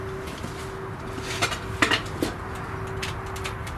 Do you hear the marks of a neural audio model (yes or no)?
no